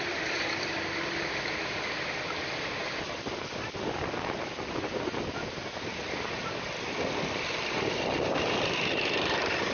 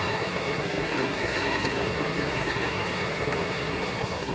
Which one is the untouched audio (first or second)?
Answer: first